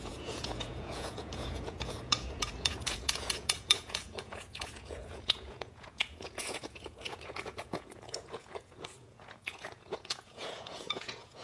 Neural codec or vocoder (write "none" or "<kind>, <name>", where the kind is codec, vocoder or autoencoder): vocoder, Vocos